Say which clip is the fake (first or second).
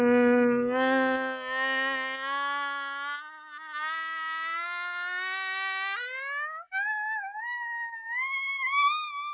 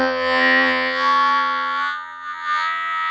second